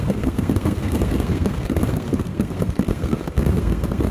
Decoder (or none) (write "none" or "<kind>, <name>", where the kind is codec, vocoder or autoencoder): codec, SNAC